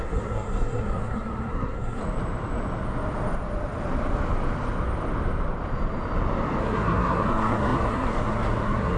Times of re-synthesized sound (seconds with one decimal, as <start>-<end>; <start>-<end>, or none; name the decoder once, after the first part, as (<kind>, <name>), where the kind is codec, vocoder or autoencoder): 0.0-2.0 (codec, SNAC); 6.6-9.0